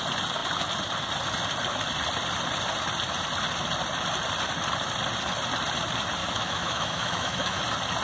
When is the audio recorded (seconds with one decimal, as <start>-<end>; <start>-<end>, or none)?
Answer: 0.0-6.2; 7.6-8.0